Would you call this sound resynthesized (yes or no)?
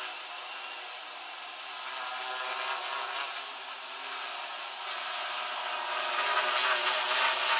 no